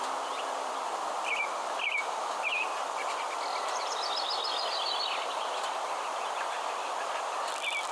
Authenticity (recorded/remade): remade